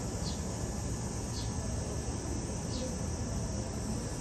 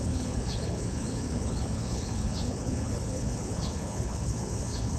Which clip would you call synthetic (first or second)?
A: second